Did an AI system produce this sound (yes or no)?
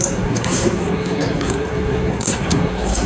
yes